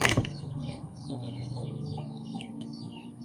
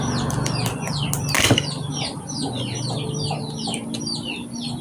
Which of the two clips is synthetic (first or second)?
first